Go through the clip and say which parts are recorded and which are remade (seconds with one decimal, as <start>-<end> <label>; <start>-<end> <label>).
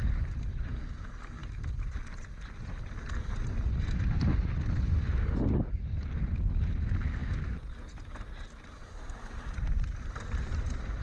0.0-11.0 recorded